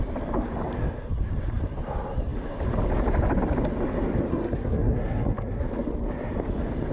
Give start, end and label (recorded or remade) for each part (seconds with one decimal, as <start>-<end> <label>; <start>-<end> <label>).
0.0-4.3 recorded; 4.3-5.6 remade; 5.6-6.9 recorded